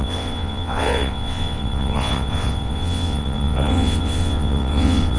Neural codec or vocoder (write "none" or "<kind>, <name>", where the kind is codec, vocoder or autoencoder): vocoder, WaveNeXt